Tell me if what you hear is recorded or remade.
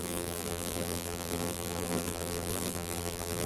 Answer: remade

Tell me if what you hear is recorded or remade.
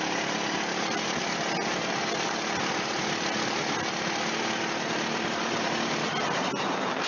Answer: recorded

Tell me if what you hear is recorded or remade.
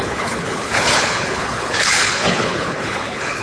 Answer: remade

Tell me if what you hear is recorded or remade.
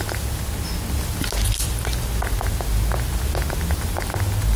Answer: recorded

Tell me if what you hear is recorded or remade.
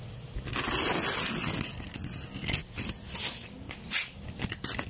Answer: recorded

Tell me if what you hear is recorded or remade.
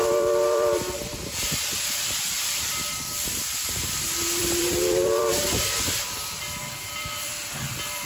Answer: remade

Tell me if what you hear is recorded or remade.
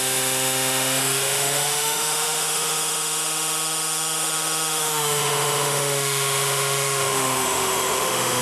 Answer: remade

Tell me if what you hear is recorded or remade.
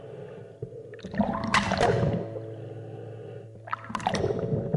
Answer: recorded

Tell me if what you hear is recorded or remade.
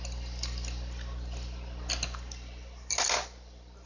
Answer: recorded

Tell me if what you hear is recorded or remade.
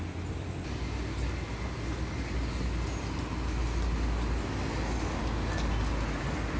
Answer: recorded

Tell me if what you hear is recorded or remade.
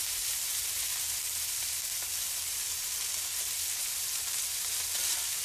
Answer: recorded